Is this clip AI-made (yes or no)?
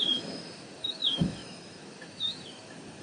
yes